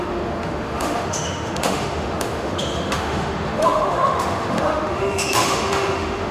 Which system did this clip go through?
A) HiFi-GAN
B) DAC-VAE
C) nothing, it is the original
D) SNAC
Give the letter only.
B